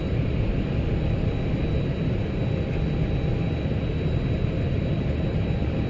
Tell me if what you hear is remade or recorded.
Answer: recorded